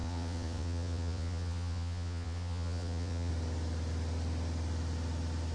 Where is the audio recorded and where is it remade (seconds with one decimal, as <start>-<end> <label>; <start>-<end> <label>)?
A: 0.0-3.3 remade; 3.3-5.5 recorded